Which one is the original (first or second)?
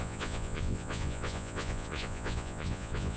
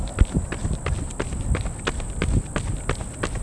second